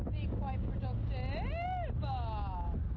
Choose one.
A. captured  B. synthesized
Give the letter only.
A